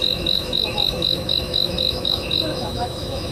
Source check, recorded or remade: remade